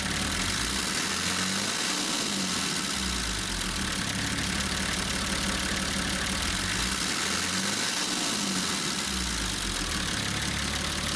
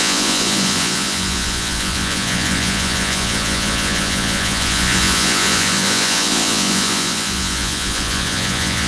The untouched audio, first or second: first